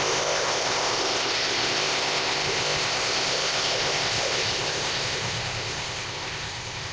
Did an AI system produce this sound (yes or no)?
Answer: yes